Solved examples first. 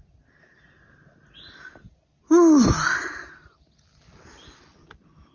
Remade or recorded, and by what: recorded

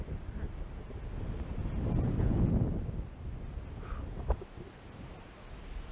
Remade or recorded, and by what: recorded